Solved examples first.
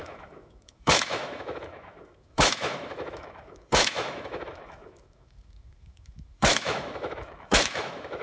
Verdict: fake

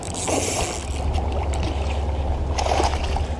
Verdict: real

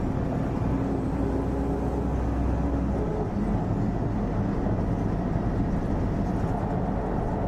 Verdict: real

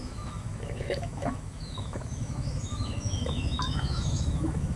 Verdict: fake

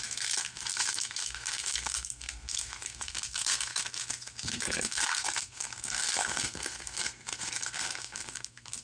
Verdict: fake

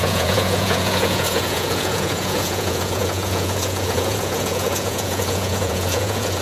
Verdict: fake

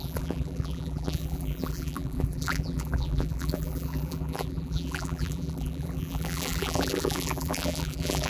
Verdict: fake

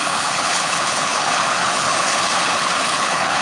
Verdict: fake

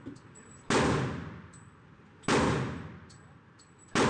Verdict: real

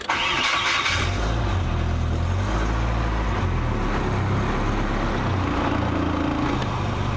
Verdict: real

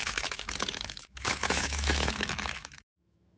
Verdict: fake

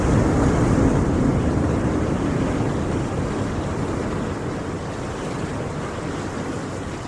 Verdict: real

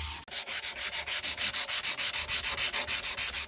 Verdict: real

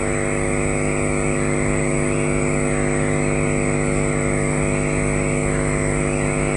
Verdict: real